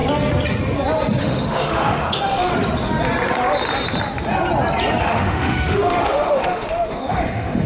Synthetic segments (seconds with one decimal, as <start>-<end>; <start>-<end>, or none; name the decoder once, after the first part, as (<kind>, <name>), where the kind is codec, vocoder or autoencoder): 1.2-2.5 (autoencoder, DAC-VAE); 5.0-7.7